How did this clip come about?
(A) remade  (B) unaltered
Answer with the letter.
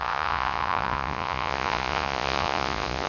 A